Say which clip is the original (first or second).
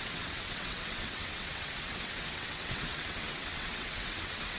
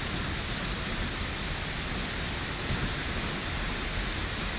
second